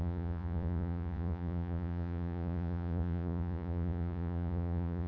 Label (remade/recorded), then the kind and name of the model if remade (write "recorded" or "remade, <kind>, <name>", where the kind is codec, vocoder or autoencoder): remade, vocoder, Vocos